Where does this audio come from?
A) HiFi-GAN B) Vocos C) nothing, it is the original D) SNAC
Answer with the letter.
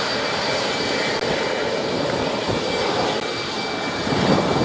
C